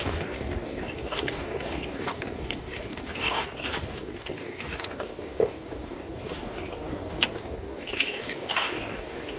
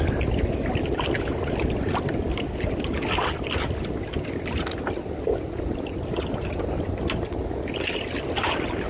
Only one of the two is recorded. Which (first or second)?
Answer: second